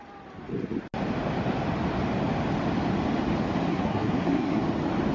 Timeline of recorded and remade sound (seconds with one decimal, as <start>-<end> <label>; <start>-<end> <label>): 0.0-3.7 recorded; 3.7-4.6 remade; 4.6-5.1 recorded